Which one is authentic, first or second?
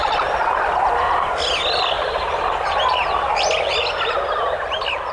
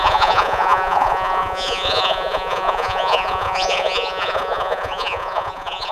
first